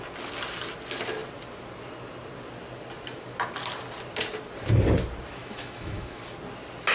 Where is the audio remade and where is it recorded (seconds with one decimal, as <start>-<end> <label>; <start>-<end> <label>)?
0.0-5.4 recorded; 5.4-6.2 remade; 6.2-6.9 recorded